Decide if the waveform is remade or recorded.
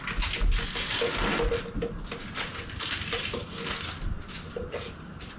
recorded